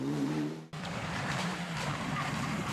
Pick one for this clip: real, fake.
fake